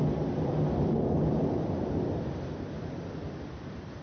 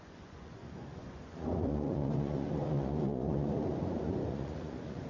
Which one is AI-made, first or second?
second